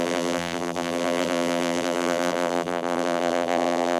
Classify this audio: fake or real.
fake